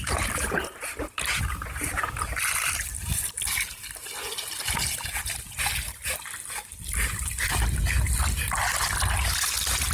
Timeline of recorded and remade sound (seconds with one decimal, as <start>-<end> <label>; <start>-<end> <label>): 0.0-9.9 recorded